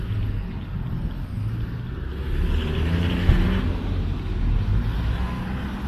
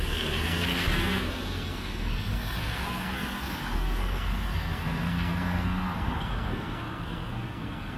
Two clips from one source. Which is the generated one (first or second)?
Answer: second